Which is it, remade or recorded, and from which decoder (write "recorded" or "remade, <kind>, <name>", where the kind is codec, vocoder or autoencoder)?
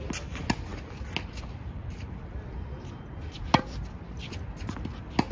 recorded